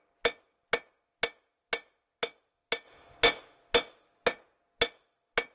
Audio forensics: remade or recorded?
recorded